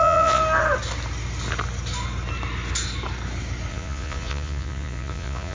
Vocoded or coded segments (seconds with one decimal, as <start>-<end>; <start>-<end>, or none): 0.0-0.4; 3.7-5.5